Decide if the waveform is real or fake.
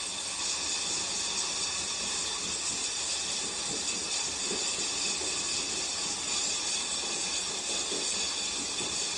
real